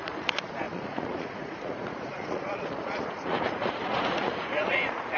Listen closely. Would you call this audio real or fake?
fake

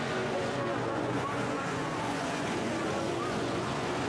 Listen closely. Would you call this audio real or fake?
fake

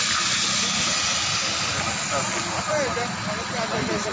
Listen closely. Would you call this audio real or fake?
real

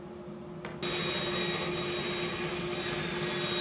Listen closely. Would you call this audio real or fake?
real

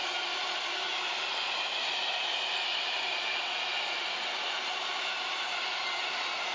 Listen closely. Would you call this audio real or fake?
real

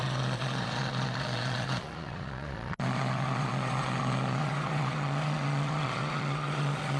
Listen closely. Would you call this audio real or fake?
fake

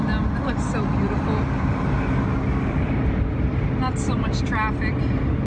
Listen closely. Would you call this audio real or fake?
real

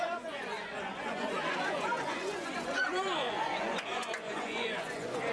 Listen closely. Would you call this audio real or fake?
fake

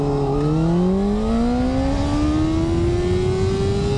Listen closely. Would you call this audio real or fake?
real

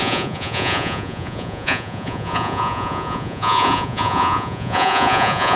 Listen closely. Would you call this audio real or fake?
fake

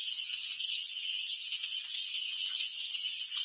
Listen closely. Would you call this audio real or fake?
fake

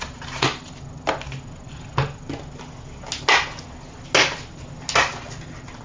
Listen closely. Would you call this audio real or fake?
real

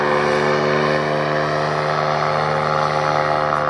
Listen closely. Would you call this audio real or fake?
real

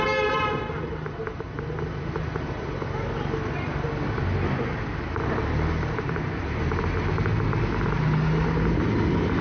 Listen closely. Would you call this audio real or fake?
real